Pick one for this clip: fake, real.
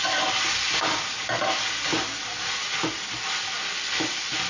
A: real